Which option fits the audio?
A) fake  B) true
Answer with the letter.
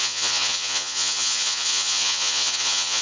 A